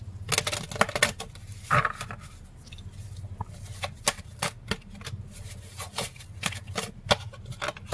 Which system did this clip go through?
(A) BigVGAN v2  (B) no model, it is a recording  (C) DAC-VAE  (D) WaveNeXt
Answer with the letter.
B